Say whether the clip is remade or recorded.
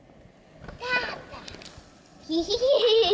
recorded